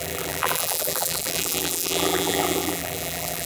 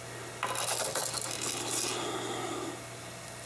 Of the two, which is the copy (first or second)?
first